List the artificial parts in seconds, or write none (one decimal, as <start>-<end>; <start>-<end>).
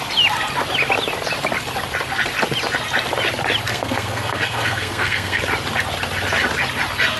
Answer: 3.7-5.4